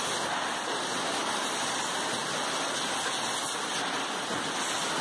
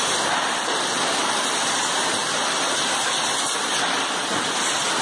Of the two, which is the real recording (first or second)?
first